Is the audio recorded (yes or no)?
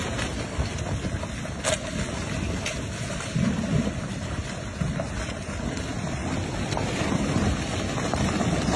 yes